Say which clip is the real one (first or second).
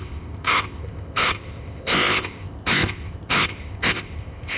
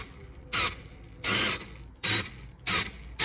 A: second